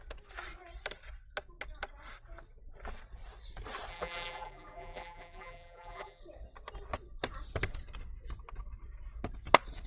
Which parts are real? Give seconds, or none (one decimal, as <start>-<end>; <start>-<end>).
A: 0.0-3.9; 6.2-9.9